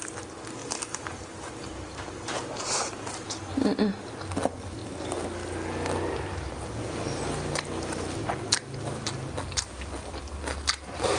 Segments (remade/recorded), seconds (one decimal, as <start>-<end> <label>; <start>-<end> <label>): 0.0-0.6 recorded; 0.6-3.4 remade; 3.4-11.2 recorded